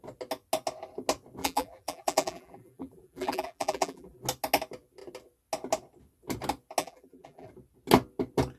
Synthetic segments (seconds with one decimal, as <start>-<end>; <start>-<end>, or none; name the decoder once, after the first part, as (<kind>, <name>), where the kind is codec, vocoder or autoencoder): 1.4-4.2 (vocoder, BigVGAN v2); 6.8-7.5